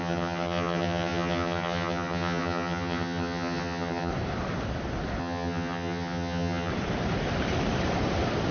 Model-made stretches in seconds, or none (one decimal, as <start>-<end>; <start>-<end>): 0.0-4.1; 5.2-6.7